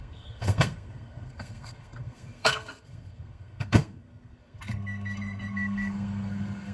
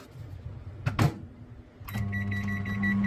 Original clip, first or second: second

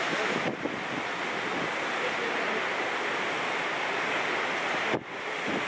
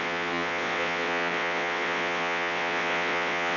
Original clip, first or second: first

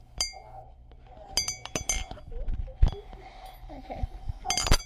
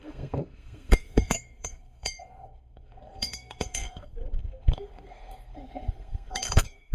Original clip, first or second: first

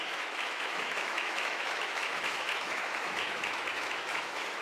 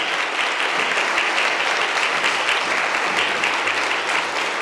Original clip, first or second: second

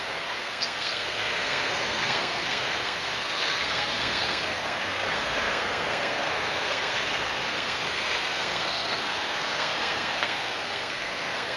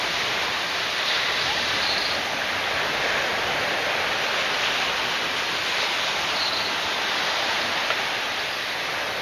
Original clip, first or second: second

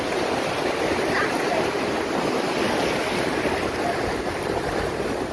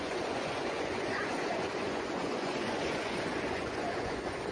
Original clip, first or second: first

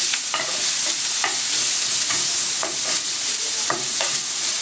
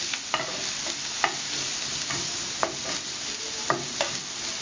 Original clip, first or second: second